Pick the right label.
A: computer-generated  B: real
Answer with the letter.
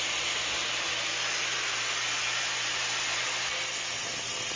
B